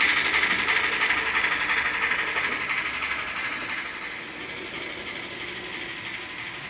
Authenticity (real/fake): real